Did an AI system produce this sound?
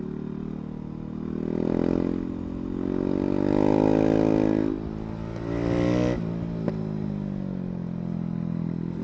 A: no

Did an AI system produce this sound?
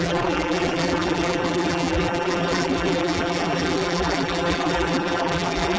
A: yes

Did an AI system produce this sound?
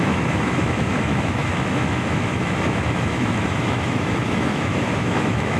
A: yes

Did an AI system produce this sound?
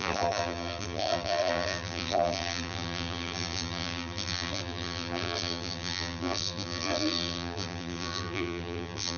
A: yes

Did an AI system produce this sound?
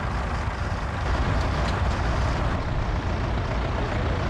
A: no